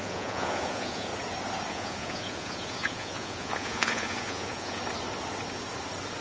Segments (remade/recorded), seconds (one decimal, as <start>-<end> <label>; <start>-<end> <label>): 0.0-1.1 remade; 1.1-1.7 recorded; 1.7-4.8 remade; 4.8-6.2 recorded